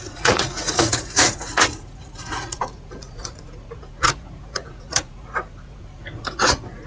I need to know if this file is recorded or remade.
remade